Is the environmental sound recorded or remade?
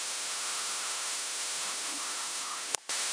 remade